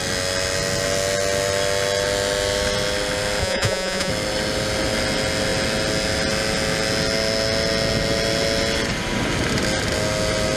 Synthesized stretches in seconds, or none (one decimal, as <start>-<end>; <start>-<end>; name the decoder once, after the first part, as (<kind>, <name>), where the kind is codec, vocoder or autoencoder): 3.4-4.1 (vocoder, Vocos)